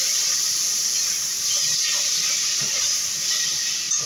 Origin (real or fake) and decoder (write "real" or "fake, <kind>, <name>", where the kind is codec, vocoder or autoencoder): fake, vocoder, BigVGAN v2